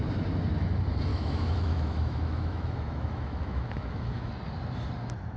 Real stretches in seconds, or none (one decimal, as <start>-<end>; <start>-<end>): 0.0-1.1; 4.3-5.4